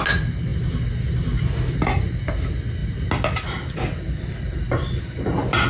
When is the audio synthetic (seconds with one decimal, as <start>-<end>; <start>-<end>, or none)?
none